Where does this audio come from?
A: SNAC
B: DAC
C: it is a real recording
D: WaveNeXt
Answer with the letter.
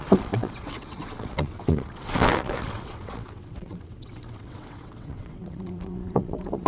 D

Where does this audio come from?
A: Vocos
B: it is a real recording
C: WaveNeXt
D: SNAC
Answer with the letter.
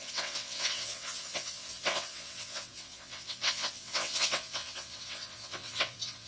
C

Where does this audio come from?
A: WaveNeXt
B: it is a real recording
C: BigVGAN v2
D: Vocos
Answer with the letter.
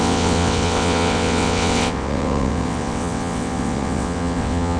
A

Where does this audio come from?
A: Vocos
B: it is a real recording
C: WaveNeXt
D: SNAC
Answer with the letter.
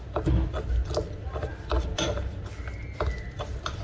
B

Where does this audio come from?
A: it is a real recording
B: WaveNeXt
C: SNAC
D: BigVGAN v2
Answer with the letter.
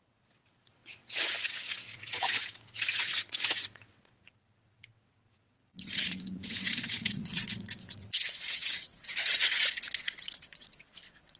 B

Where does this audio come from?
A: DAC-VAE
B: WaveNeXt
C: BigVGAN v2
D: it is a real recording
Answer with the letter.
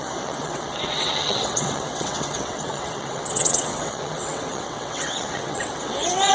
B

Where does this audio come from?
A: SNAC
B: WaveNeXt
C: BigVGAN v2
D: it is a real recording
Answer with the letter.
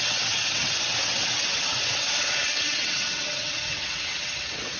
B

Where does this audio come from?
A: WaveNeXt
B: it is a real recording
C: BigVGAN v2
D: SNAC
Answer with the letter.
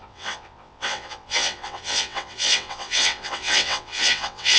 A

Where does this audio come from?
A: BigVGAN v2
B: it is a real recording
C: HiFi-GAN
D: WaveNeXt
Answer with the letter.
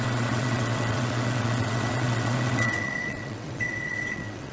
D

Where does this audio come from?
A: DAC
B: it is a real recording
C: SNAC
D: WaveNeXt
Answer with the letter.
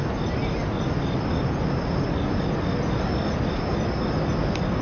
B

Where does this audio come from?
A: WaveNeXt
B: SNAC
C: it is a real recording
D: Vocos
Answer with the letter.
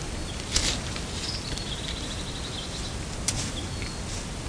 C